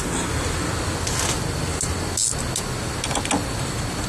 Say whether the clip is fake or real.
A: real